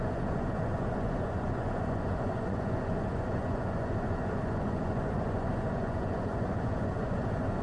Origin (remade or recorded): remade